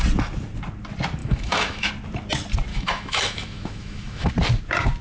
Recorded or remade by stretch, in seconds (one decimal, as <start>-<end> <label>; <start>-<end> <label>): 0.0-1.2 recorded; 1.2-1.9 remade; 1.9-2.7 recorded; 2.7-4.3 remade; 4.3-5.0 recorded